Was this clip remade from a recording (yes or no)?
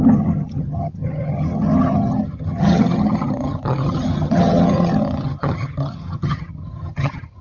yes